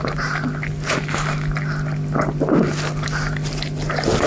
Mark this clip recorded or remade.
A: recorded